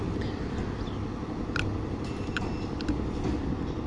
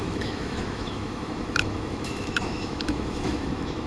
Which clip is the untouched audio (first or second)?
first